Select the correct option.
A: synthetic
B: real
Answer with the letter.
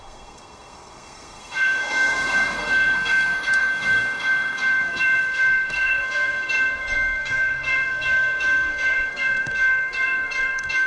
A